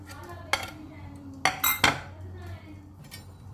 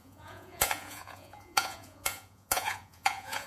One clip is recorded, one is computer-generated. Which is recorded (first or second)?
first